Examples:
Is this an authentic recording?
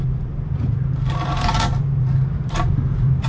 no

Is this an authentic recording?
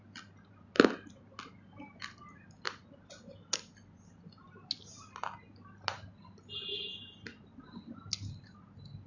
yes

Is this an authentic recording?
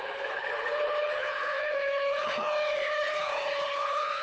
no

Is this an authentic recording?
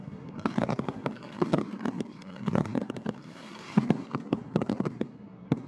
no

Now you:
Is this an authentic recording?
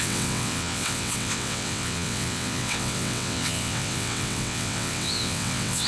no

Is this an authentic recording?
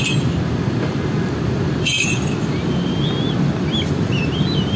yes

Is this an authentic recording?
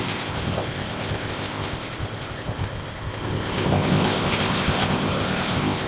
no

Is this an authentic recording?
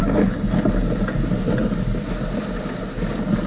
yes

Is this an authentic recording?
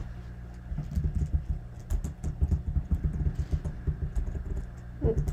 yes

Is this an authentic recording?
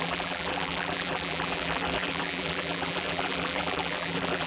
no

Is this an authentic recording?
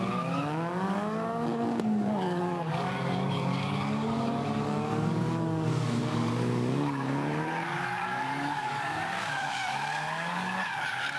no